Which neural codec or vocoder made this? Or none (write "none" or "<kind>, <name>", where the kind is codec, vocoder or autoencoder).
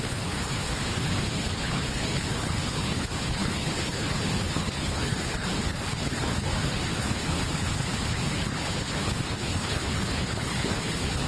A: codec, HILCodec